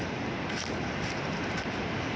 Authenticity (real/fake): real